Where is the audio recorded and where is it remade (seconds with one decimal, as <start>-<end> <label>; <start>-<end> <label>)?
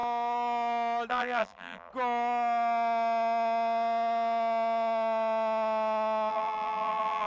0.0-1.1 recorded; 1.1-1.9 remade; 1.9-6.3 recorded; 6.3-7.3 remade